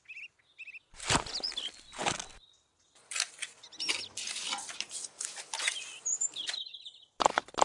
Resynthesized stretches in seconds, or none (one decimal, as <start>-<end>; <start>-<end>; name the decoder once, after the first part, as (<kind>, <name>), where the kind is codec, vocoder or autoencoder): none